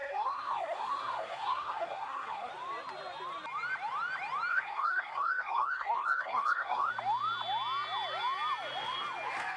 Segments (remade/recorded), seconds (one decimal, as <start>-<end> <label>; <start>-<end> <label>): 0.0-2.5 remade; 2.5-4.5 recorded; 4.5-6.9 remade; 6.9-9.6 recorded